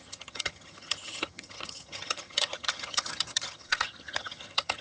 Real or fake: fake